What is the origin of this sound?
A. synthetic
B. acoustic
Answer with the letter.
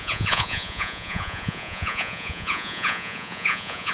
A